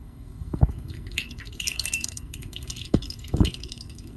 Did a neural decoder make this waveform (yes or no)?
yes